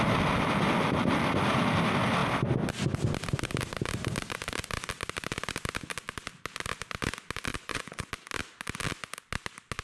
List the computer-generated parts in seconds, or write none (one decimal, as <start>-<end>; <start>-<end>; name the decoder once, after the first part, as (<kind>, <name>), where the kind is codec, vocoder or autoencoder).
7.5-8.1 (vocoder, Vocos)